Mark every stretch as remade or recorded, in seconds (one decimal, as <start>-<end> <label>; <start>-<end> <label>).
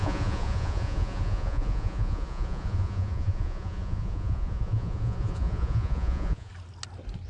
0.0-6.5 remade; 6.5-7.3 recorded